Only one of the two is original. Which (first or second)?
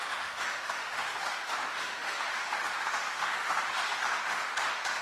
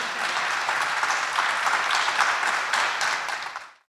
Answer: second